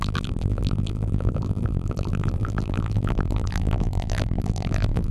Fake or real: fake